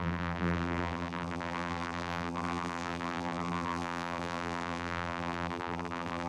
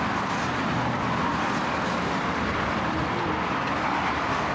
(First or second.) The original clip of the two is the second